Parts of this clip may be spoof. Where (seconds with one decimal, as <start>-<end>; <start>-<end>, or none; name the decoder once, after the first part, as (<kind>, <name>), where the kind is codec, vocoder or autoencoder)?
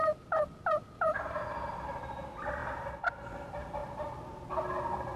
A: 3.8-4.5 (vocoder, BigVGAN v2)